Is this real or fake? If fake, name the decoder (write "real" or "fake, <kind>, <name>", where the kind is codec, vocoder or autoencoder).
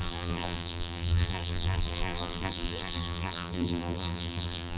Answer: fake, vocoder, BigVGAN v2